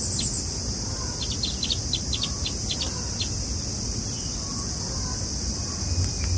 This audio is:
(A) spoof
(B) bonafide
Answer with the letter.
B